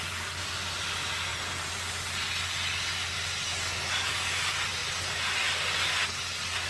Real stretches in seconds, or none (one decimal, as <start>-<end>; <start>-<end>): 0.0-6.7